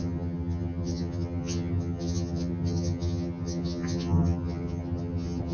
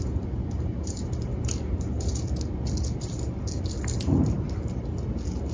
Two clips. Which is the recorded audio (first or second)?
second